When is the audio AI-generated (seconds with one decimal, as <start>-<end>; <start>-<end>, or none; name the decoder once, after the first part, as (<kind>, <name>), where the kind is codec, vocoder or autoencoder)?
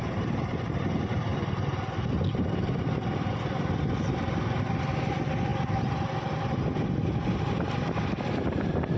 none